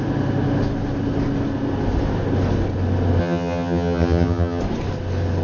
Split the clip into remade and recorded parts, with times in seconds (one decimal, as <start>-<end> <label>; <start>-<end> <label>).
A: 0.0-3.2 recorded; 3.2-4.6 remade; 4.6-5.4 recorded